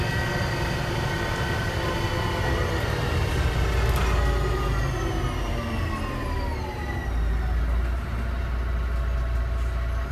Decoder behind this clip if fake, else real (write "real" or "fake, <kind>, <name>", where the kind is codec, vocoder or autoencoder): real